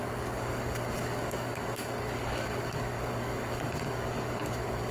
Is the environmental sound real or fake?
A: fake